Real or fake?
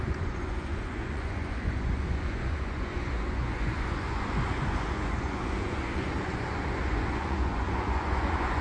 fake